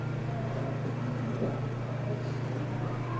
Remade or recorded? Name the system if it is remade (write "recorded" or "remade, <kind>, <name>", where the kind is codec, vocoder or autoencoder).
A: recorded